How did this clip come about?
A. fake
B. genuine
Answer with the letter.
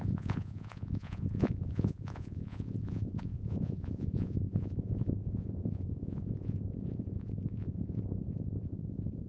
A